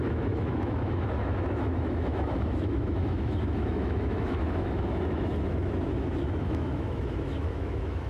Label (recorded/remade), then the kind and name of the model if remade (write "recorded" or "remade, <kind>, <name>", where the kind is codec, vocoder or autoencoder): remade, autoencoder, DAC-VAE